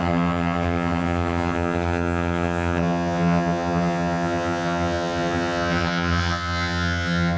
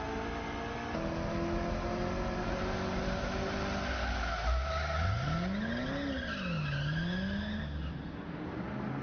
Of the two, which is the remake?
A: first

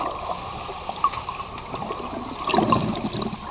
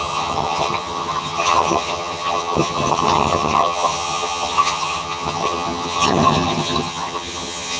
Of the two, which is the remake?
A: second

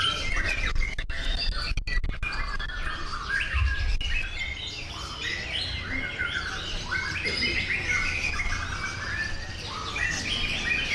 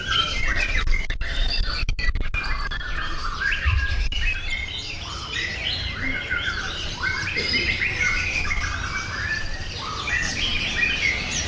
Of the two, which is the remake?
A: second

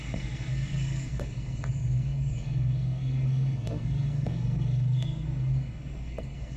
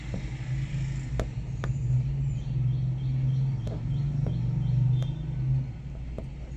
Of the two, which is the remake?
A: first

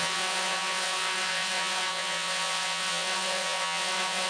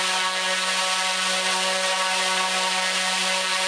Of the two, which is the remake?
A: first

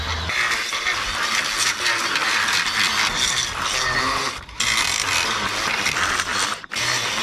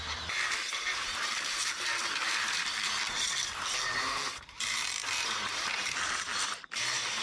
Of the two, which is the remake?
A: second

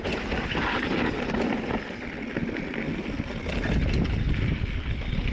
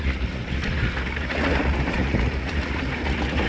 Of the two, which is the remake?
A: second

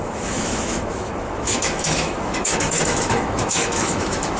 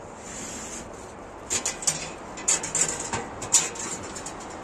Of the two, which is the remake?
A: first